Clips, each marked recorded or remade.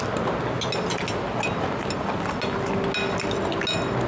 recorded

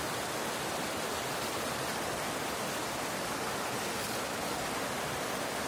recorded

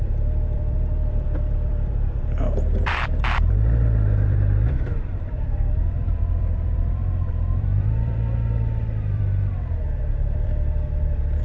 remade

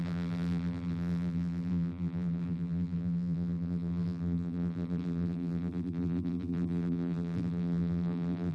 remade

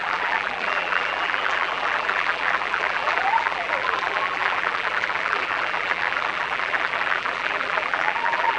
remade